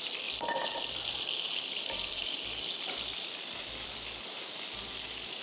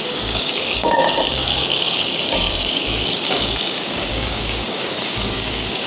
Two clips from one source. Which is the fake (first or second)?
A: second